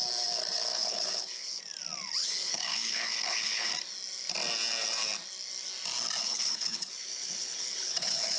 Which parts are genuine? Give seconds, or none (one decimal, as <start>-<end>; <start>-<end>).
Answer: 0.0-0.7; 1.6-2.2; 3.7-6.2